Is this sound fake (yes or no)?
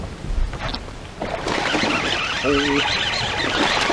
no